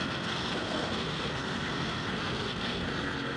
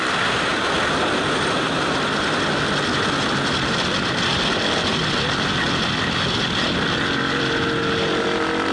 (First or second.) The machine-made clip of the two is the first